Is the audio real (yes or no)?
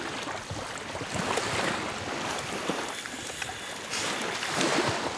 yes